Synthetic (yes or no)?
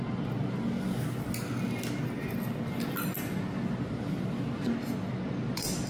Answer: no